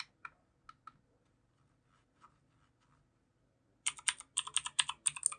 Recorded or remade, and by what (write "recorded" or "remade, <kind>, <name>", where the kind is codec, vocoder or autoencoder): recorded